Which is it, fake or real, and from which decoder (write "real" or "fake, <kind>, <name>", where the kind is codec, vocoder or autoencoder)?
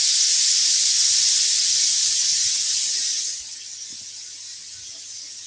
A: real